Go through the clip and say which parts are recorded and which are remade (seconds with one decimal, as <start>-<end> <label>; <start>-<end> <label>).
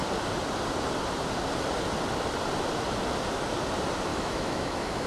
0.0-4.1 recorded; 4.1-5.1 remade